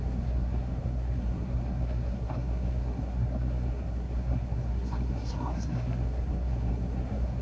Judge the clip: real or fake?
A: fake